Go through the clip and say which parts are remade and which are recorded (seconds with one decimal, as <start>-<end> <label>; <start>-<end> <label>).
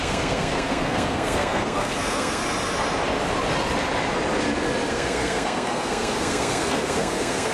0.0-2.4 remade; 2.4-4.9 recorded; 4.9-7.5 remade